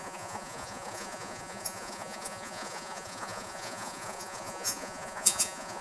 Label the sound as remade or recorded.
remade